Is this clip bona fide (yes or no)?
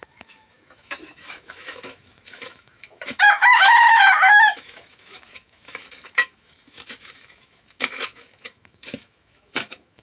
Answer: no